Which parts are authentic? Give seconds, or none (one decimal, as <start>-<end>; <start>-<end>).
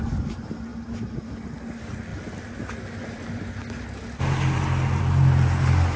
0.0-6.0